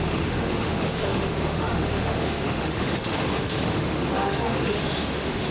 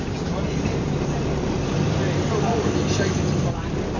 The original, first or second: second